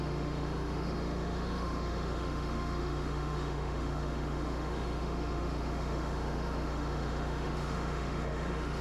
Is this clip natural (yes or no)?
no